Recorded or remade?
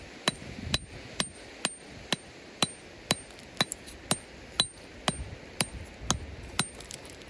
recorded